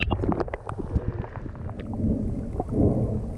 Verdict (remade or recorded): recorded